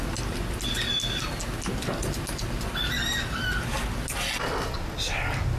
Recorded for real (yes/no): yes